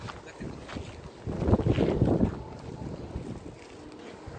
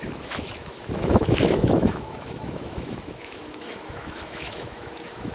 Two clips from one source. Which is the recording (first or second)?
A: first